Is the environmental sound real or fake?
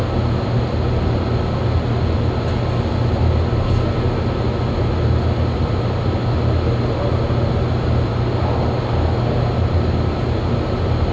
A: real